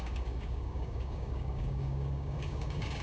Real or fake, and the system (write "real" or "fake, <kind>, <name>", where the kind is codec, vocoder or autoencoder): fake, codec, DAC